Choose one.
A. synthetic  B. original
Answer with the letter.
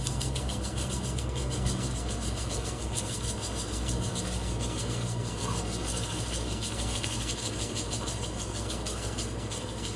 A